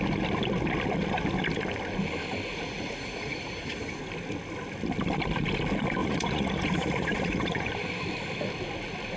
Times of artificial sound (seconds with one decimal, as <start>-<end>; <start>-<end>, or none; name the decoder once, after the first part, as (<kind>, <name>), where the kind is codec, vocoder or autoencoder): 2.5-4.0 (vocoder, Vocos); 6.0-7.7